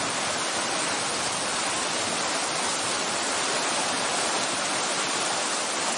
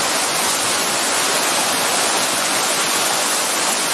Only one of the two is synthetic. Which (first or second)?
second